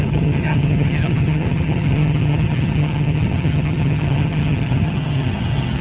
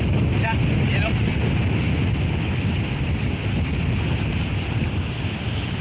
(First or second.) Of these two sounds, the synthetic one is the first